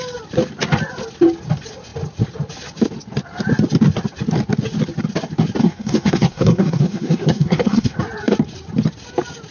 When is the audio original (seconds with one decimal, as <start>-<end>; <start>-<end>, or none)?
0.0-5.6; 8.0-9.5